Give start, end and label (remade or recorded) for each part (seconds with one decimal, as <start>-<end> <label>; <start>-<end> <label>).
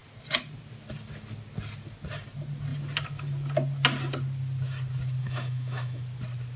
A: 0.0-5.2 recorded; 5.2-6.0 remade; 6.0-6.6 recorded